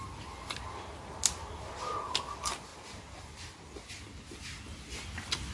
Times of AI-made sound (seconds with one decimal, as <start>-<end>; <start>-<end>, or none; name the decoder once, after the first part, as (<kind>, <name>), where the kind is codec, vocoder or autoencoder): none